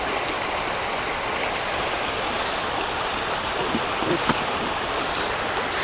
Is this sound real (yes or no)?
yes